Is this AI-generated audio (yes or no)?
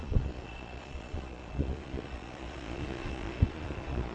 yes